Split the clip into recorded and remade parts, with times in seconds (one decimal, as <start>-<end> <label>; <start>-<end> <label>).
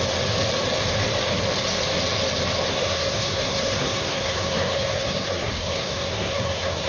0.0-2.7 recorded; 2.7-6.9 remade